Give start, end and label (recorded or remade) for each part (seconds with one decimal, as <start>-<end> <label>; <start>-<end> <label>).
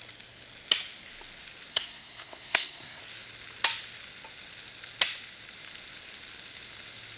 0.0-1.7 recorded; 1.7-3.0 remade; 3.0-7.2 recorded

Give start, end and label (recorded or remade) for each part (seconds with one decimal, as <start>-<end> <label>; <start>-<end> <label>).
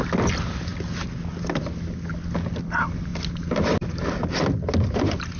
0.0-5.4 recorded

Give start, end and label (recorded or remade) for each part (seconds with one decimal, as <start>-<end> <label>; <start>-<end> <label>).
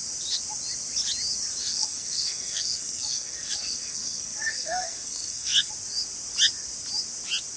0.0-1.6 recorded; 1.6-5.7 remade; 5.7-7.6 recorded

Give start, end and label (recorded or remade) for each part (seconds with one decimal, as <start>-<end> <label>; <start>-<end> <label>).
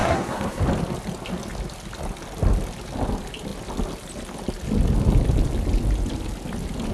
0.0-0.6 remade; 0.6-6.9 recorded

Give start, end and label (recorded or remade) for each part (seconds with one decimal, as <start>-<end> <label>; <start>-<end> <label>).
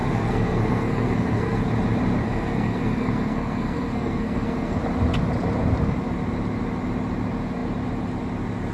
0.0-1.6 remade; 1.6-2.2 recorded; 2.2-4.8 remade; 4.8-8.7 recorded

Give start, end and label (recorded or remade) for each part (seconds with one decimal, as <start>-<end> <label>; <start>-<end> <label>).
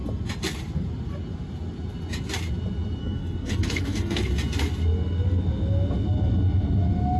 0.0-3.0 recorded; 3.0-4.3 remade; 4.3-7.2 recorded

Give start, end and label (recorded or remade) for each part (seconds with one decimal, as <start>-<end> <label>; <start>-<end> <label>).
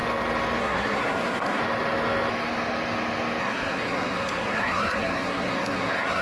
0.0-0.6 recorded; 0.6-1.6 remade; 1.6-3.4 recorded; 3.4-6.2 remade